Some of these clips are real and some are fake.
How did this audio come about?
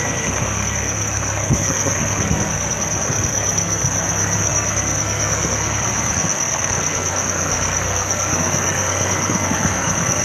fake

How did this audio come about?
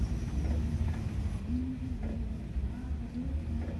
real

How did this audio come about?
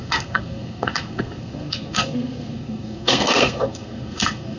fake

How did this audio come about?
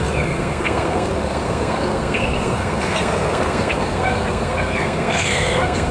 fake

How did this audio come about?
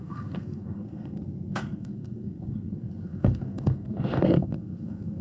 fake